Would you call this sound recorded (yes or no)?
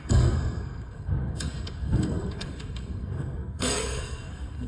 no